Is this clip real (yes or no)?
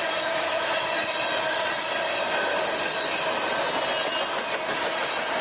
yes